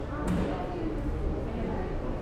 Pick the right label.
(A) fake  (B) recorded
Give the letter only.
A